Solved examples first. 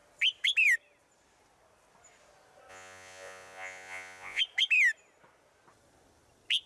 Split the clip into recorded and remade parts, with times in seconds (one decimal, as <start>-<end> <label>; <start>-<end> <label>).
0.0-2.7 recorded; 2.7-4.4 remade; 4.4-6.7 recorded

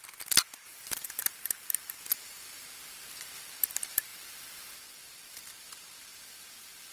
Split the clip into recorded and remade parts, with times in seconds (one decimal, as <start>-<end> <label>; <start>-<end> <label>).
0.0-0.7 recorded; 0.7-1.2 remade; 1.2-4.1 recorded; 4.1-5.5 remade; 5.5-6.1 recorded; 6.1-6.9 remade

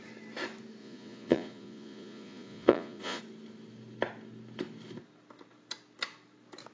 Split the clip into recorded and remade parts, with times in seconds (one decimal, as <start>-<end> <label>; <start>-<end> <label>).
0.0-0.8 recorded; 0.8-3.2 remade; 3.2-6.7 recorded